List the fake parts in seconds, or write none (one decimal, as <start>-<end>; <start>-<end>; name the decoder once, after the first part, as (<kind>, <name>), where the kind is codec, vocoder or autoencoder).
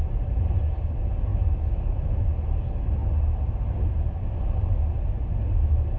none